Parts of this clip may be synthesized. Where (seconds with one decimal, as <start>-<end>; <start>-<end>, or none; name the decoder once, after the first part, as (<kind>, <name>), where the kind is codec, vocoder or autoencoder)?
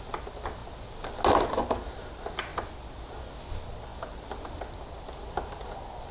none